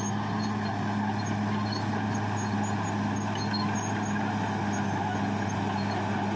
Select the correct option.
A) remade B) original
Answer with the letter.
B